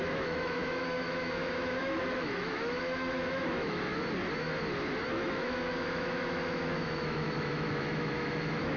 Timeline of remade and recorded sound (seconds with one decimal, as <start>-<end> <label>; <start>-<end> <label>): 0.0-3.9 remade; 3.9-5.1 recorded; 5.1-8.8 remade

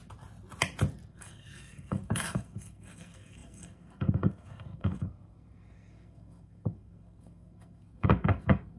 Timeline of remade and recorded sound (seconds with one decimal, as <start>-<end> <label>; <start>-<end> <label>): 0.0-1.1 recorded; 1.1-8.8 remade

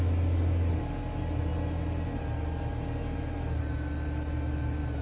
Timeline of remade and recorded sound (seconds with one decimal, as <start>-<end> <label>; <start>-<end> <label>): 0.0-5.0 recorded

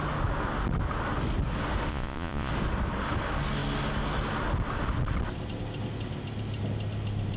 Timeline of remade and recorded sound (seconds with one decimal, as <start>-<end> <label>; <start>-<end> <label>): 0.0-1.9 recorded; 1.9-2.5 remade; 2.5-7.4 recorded